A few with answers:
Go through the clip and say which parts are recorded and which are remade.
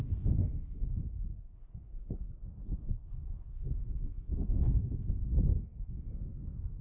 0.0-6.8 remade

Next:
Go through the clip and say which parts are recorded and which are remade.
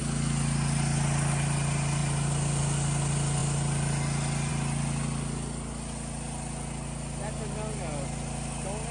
0.0-8.9 recorded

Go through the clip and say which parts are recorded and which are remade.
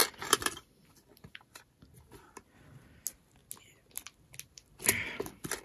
0.0-5.6 recorded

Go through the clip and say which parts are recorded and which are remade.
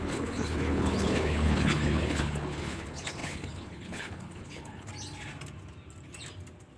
0.0-4.9 remade; 4.9-6.8 recorded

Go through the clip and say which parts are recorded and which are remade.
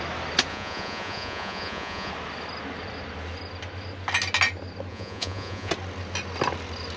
0.0-0.5 recorded; 0.5-2.1 remade; 2.1-4.9 recorded; 4.9-5.7 remade; 5.7-7.0 recorded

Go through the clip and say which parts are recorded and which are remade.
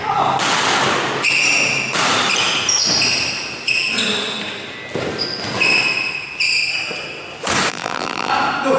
0.0-7.7 recorded; 7.7-8.3 remade; 8.3-8.8 recorded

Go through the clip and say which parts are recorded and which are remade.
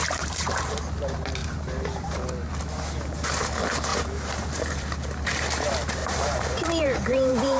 0.0-0.7 remade; 0.7-1.4 recorded; 1.4-2.5 remade; 2.5-3.9 recorded; 3.9-5.4 remade; 5.4-6.0 recorded; 6.0-7.6 remade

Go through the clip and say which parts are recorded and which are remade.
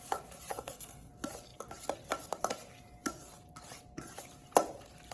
0.0-0.5 recorded; 0.5-1.1 remade; 1.1-5.1 recorded